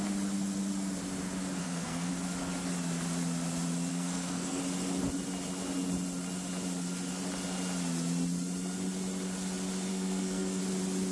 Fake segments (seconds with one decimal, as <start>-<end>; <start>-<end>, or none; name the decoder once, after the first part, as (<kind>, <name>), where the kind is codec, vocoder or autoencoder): 1.6-2.1 (codec, SNAC); 3.9-4.6; 9.9-10.6